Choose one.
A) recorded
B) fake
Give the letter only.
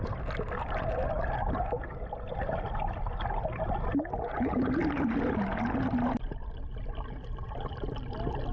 A